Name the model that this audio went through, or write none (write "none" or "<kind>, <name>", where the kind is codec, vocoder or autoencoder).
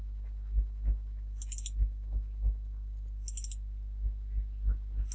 none